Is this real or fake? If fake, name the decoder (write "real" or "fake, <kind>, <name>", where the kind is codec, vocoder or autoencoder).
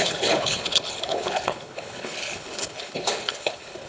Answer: fake, codec, HILCodec